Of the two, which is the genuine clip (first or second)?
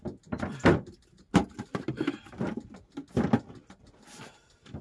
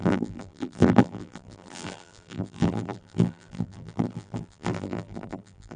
first